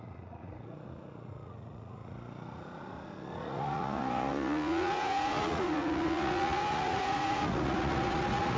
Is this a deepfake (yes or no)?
yes